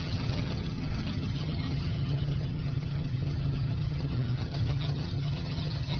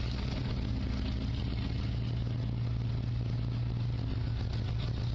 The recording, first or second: second